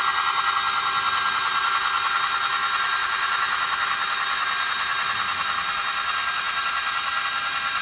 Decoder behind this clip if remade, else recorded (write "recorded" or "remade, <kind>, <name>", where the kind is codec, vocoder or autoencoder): recorded